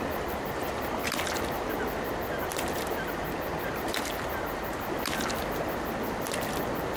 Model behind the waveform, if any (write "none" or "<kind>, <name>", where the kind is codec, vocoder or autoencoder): none